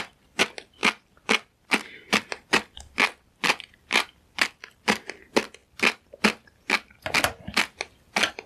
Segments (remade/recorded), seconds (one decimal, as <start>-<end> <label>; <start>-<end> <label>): 0.0-0.8 recorded; 0.8-5.1 remade; 5.1-8.5 recorded